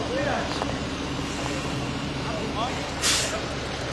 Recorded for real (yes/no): yes